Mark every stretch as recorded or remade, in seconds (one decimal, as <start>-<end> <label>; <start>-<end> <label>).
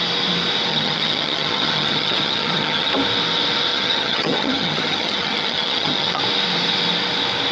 0.0-0.7 recorded; 0.7-2.9 remade; 2.9-3.7 recorded; 3.7-6.2 remade; 6.2-7.5 recorded